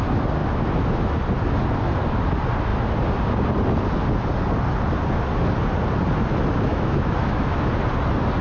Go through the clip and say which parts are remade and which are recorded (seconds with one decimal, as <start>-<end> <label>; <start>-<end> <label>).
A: 0.0-6.7 recorded; 6.7-7.7 remade; 7.7-8.4 recorded